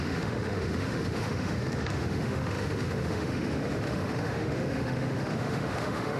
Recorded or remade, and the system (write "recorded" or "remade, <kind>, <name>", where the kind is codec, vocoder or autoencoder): remade, autoencoder, DAC-VAE